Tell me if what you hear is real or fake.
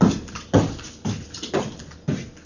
real